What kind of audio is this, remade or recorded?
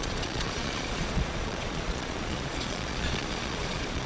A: remade